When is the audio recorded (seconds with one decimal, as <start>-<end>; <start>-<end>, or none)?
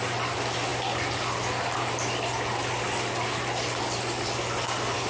0.0-5.1